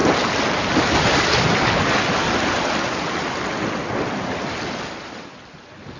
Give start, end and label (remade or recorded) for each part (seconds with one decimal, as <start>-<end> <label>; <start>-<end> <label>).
0.0-6.0 recorded